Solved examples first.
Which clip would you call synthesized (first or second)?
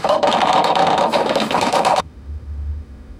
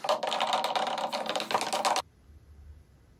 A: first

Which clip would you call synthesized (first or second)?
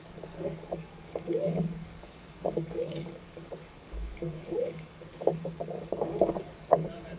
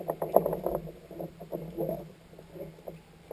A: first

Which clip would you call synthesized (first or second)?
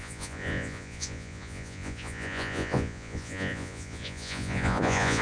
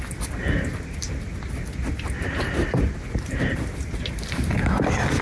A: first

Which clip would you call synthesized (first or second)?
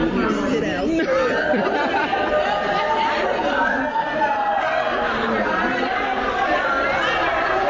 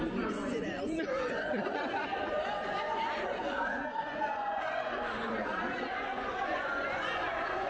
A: second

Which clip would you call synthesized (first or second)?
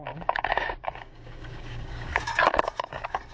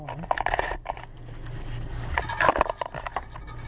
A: first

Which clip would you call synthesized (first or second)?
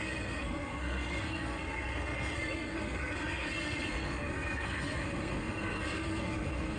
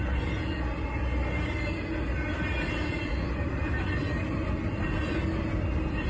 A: first